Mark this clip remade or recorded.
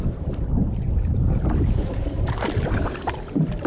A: recorded